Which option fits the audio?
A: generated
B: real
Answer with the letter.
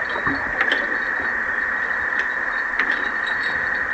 B